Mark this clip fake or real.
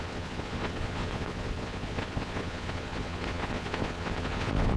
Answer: fake